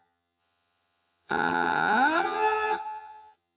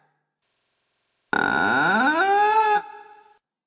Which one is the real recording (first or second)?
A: second